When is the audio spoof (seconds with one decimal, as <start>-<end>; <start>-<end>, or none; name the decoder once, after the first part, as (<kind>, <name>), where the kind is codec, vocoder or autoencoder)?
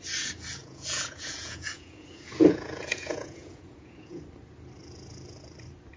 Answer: 0.6-4.2 (vocoder, Vocos)